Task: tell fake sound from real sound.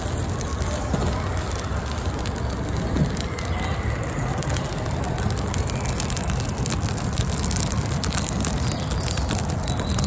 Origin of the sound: real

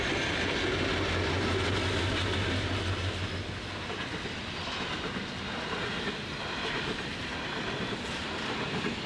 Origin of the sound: real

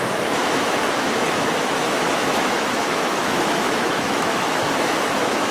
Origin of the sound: fake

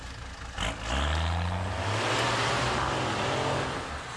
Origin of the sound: real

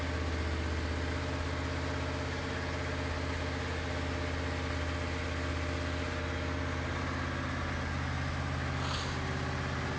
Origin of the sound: real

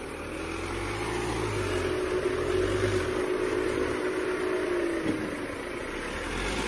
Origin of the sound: real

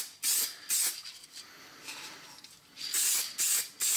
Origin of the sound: real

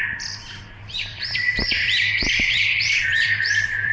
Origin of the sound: fake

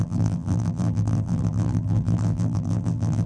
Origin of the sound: fake